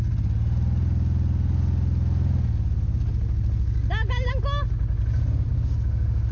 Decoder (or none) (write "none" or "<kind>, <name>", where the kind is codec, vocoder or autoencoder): none